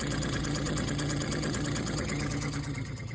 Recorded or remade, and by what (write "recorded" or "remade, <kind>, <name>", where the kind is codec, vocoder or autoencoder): remade, vocoder, HiFi-GAN